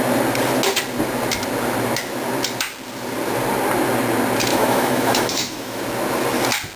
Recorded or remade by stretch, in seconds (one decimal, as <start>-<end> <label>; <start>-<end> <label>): 0.0-4.5 recorded; 4.5-5.8 remade; 5.8-6.8 recorded